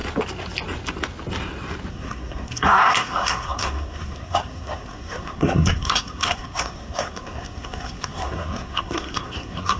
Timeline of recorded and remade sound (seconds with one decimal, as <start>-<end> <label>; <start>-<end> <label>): 0.0-1.9 recorded; 1.9-9.8 remade